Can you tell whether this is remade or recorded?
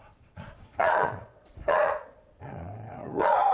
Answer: remade